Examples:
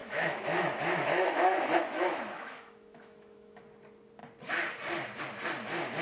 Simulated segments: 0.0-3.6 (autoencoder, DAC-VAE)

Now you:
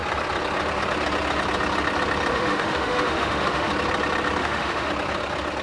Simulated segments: 2.3-3.7 (autoencoder, DAC-VAE); 4.4-4.9

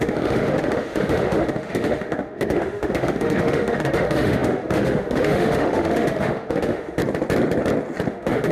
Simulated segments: 0.0-7.0 (autoencoder, DAC-VAE); 8.1-8.5

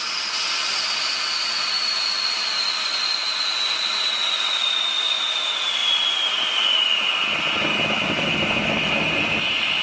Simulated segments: 7.7-8.9 (autoencoder, DAC-VAE)

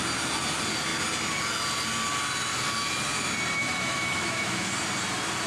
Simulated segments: 3.6-4.7 (autoencoder, DAC-VAE)

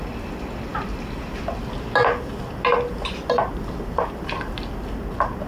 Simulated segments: none

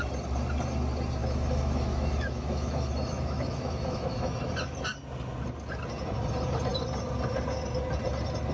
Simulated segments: 1.2-4.5 (autoencoder, DAC-VAE)

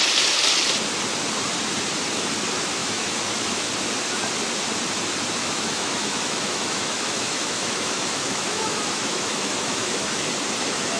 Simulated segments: 2.8-3.7 (autoencoder, DAC-VAE); 5.4-10.3